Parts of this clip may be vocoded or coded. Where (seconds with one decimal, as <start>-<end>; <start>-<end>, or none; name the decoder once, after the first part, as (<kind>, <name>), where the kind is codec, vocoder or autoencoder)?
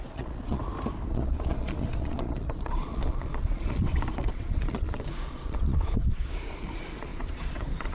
0.0-0.6 (vocoder, Vocos); 1.1-7.9